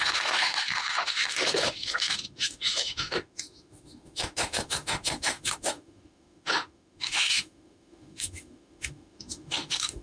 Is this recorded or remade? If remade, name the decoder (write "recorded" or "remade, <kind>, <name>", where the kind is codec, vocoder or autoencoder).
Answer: remade, autoencoder, DAC-VAE